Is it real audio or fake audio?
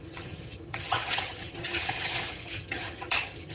fake